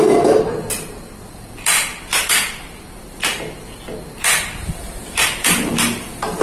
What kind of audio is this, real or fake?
real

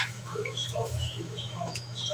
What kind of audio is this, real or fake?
fake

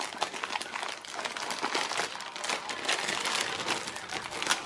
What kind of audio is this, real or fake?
real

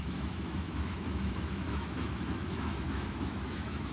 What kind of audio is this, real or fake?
fake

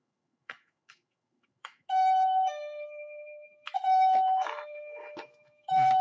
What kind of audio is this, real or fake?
fake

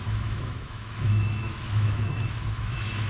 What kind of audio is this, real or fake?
fake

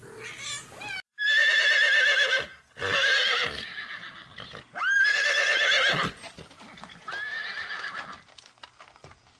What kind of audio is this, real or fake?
real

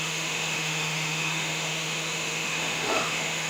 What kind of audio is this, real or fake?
fake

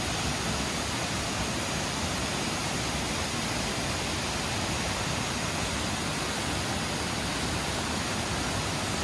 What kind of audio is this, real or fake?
real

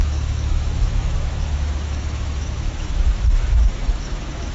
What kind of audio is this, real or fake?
fake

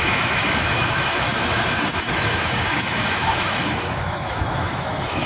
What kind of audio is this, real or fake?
fake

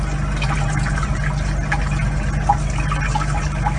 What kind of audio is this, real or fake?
real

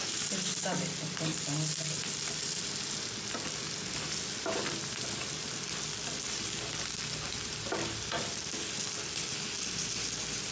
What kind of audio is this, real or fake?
real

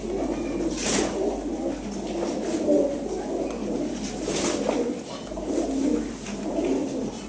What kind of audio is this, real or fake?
real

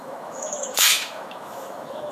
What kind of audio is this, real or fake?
fake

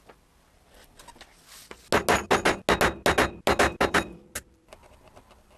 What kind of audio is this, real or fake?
real